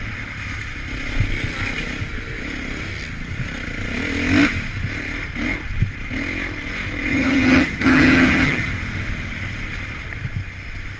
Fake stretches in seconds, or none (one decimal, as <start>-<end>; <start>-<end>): 7.1-8.7